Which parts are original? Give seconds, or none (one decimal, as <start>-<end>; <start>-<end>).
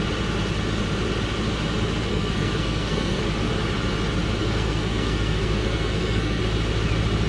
0.0-2.1; 3.2-4.4; 6.4-7.3